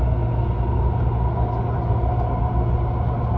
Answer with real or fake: real